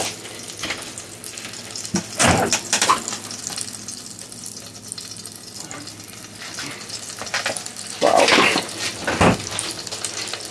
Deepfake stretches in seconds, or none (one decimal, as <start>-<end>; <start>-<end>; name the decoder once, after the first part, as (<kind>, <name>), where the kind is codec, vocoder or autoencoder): none